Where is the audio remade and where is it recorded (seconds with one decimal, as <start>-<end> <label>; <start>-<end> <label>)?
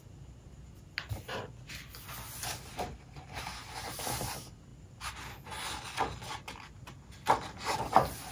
0.0-8.3 recorded